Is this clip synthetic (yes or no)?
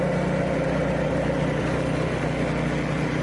no